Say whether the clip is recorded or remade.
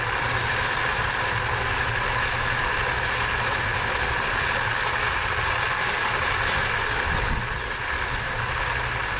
recorded